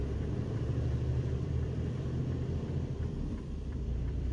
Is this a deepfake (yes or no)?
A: yes